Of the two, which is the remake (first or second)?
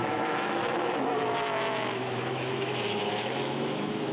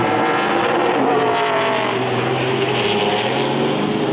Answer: first